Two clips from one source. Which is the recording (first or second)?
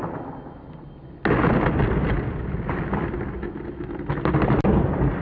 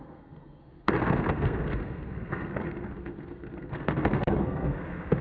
first